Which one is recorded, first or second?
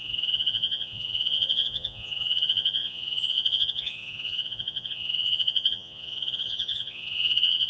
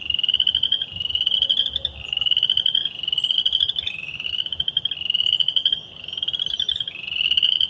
second